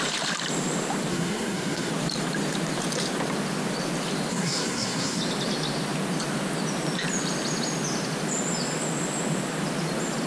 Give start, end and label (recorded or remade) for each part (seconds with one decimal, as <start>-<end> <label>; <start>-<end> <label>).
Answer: 0.0-1.1 recorded; 1.1-1.9 remade; 1.9-4.3 recorded; 4.3-5.2 remade; 5.2-10.3 recorded

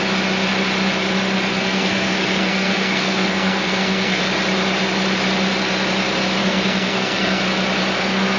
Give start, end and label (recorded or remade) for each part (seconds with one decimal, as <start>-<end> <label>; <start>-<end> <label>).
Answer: 0.0-1.5 recorded; 1.5-4.2 remade; 4.2-6.4 recorded; 6.4-7.4 remade; 7.4-8.4 recorded

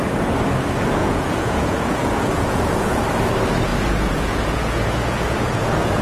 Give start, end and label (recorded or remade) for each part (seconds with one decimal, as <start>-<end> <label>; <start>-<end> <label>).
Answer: 0.0-1.0 recorded; 1.0-3.0 remade; 3.0-3.7 recorded; 3.7-6.0 remade

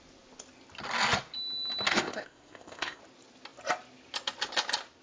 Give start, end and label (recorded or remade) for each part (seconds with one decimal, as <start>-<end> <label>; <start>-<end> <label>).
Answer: 0.0-1.9 recorded; 1.9-3.0 remade; 3.0-5.0 recorded